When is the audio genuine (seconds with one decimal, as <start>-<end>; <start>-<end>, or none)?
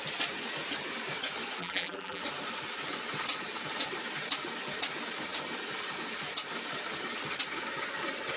0.0-1.6; 2.2-8.4